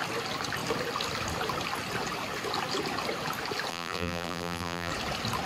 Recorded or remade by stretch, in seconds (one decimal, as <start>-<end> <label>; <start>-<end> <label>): 0.0-3.7 recorded; 3.7-4.9 remade; 4.9-5.5 recorded

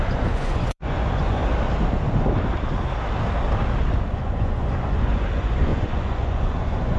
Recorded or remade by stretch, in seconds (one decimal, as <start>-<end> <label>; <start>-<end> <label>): 0.0-1.4 remade; 1.4-4.1 recorded; 4.1-7.0 remade